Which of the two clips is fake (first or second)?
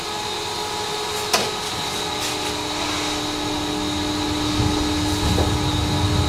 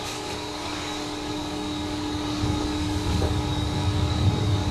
second